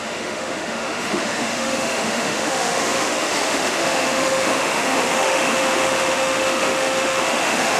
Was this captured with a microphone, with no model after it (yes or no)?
no